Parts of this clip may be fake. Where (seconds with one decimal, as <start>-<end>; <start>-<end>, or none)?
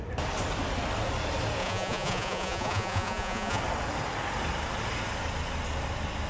1.6-3.6